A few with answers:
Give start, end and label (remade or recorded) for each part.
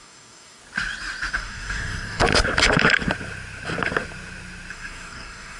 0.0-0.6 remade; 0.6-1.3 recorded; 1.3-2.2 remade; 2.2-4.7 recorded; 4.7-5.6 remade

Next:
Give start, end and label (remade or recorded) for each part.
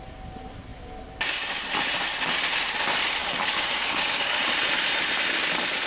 0.0-3.2 recorded; 3.2-4.4 remade; 4.4-5.9 recorded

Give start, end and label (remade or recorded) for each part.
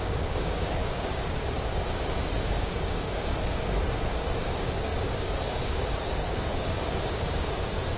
0.0-8.0 remade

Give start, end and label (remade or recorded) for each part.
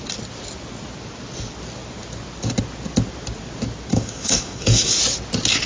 0.0-3.9 recorded; 3.9-5.0 remade; 5.0-5.7 recorded